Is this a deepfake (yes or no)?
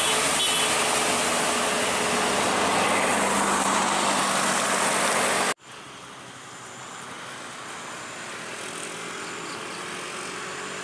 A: no